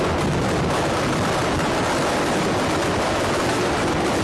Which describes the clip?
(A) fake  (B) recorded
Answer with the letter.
B